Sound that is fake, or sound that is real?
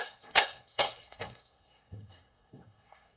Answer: fake